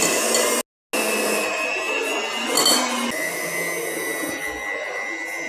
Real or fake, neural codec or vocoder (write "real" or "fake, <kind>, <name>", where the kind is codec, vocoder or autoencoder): real